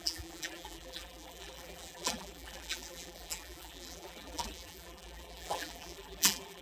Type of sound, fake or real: fake